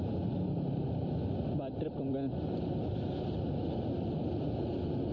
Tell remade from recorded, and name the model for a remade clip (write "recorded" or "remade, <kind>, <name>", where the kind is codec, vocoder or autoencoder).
recorded